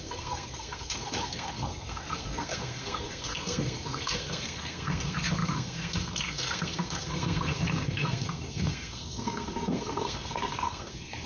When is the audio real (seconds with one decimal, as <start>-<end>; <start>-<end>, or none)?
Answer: none